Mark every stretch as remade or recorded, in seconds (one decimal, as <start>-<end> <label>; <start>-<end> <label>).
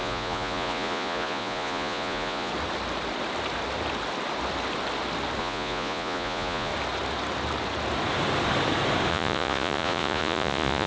0.0-2.5 remade; 2.5-5.4 recorded; 5.4-6.7 remade; 6.7-9.1 recorded; 9.1-10.9 remade